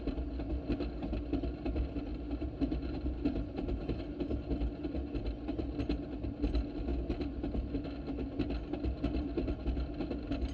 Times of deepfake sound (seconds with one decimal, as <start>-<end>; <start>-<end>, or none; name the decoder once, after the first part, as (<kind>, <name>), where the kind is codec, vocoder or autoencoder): 2.1-4.0 (vocoder, BigVGAN v2)